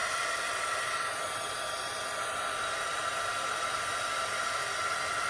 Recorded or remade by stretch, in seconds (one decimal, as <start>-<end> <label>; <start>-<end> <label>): 0.0-3.9 remade; 3.9-5.3 recorded